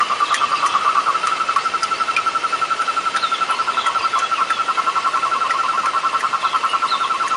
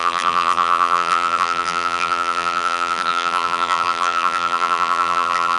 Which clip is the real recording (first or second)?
first